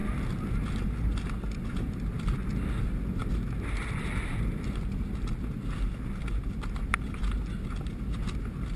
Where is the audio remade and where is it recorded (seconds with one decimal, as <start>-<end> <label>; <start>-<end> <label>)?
0.0-8.8 recorded